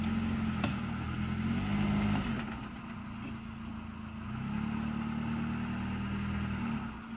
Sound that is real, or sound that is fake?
real